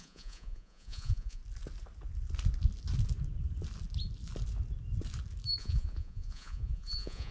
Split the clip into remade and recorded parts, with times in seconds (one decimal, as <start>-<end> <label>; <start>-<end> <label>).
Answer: 0.0-1.4 remade; 1.4-5.6 recorded; 5.6-7.3 remade